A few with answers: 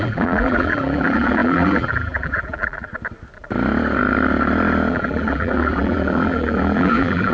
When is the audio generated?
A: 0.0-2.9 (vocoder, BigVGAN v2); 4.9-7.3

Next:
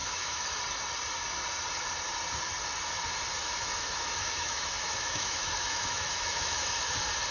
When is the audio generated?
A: 0.0-0.6 (autoencoder, DAC-VAE); 3.4-6.7

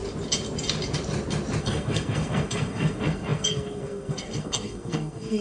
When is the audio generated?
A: 1.6-5.4 (codec, SNAC)

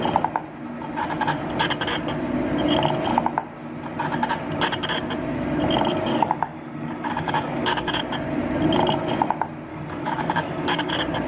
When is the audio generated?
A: 6.1-8.0 (codec, DAC); 9.7-10.9

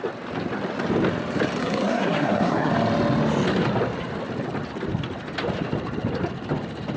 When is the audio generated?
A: 1.6-2.7 (codec, SNAC)